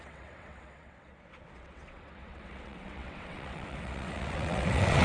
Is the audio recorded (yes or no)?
no